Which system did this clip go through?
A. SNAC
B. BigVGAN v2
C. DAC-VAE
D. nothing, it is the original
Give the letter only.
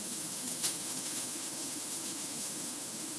C